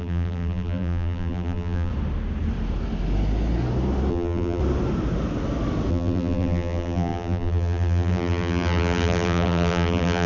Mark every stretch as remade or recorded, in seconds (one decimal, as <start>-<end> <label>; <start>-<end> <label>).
0.0-1.9 remade; 1.9-4.1 recorded; 4.1-4.6 remade; 4.6-5.9 recorded; 5.9-10.3 remade